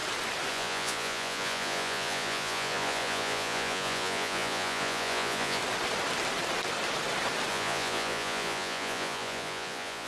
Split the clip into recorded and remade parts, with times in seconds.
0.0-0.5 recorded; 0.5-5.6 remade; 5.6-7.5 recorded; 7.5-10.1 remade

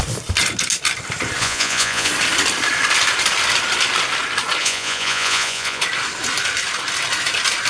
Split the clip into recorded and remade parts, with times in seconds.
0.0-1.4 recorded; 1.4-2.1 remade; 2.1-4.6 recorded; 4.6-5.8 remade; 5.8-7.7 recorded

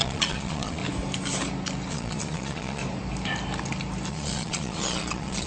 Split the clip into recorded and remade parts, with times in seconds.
0.0-0.8 remade; 0.8-1.9 recorded; 1.9-2.8 remade; 2.8-4.1 recorded; 4.1-5.5 remade

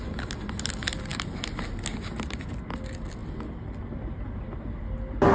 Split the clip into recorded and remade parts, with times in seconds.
0.0-5.3 recorded

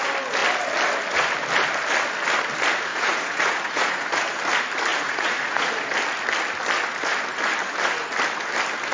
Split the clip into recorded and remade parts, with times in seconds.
0.0-2.9 recorded; 2.9-4.2 remade; 4.2-4.9 recorded; 4.9-5.7 remade; 5.7-8.9 recorded

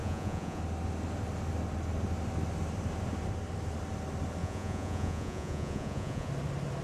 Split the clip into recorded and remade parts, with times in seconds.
0.0-0.6 remade; 0.6-4.4 recorded; 4.4-6.3 remade; 6.3-6.8 recorded

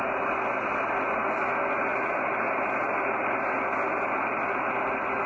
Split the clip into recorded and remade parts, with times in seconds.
0.0-5.3 recorded

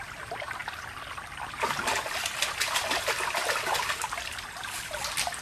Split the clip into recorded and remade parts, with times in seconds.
0.0-5.4 recorded